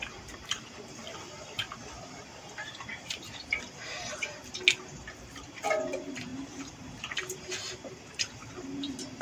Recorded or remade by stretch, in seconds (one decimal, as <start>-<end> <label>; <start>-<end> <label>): 0.0-4.4 remade; 4.4-5.2 recorded; 5.2-9.2 remade